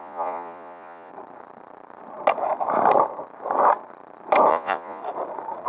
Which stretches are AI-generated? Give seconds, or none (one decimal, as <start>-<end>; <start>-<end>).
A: 0.0-1.1; 4.5-5.0